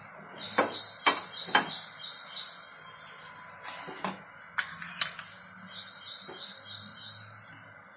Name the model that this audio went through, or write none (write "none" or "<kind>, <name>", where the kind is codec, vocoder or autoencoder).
none